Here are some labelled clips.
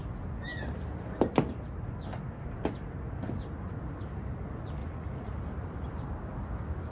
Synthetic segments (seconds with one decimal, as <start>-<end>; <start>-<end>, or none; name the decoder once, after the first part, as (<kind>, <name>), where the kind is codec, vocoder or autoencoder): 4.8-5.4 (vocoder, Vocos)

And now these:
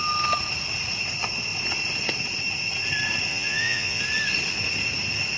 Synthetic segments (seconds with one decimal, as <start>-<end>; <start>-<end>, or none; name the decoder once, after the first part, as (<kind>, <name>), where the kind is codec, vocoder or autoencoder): 3.3-4.0 (vocoder, Vocos)

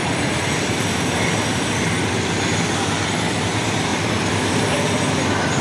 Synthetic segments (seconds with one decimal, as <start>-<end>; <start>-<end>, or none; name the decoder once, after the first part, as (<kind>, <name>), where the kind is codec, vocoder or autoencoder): none

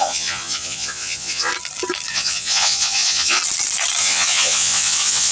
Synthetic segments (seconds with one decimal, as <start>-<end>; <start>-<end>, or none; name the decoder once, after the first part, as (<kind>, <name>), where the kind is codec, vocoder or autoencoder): 0.0-1.5 (vocoder, Vocos); 2.1-3.4; 4.0-5.3